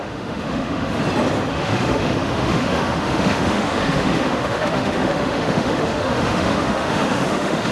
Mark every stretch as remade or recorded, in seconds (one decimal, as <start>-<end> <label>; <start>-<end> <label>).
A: 0.0-1.0 remade; 1.0-1.5 recorded; 1.5-7.7 remade